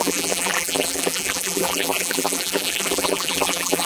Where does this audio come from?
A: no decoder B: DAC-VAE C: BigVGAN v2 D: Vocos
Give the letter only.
C